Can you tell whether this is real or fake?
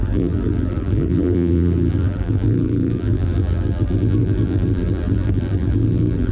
fake